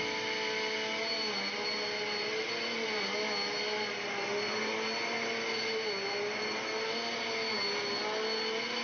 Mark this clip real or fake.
real